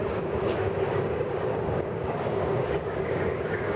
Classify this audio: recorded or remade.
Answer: remade